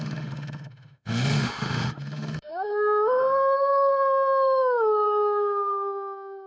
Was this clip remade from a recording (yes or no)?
yes